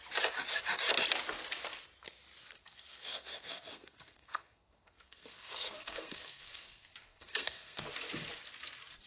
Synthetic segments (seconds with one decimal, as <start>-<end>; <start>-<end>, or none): 2.6-7.8